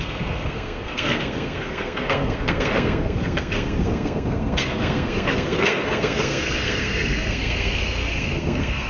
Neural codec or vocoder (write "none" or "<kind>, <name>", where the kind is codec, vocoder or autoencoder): codec, SNAC